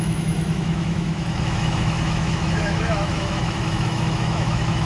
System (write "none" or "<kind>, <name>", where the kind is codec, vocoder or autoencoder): autoencoder, DAC-VAE